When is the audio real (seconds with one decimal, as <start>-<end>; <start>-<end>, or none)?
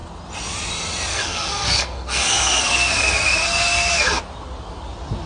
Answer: 0.0-1.1; 4.2-5.3